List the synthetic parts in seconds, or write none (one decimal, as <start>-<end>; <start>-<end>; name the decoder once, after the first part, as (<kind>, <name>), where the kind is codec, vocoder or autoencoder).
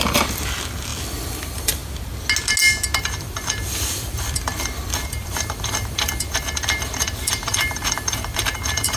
0.0-1.8 (vocoder, BigVGAN v2); 3.0-9.0